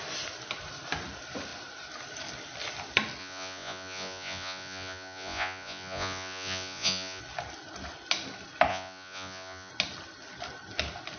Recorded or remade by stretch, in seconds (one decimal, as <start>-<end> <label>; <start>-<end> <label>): 0.0-3.2 recorded; 3.2-7.2 remade; 7.2-8.7 recorded; 8.7-9.7 remade; 9.7-11.2 recorded